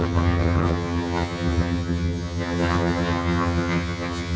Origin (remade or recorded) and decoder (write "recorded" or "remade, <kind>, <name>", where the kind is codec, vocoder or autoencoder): remade, vocoder, HiFi-GAN